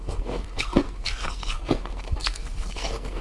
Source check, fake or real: fake